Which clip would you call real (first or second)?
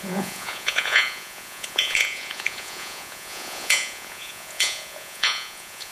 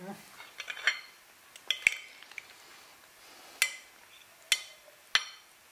second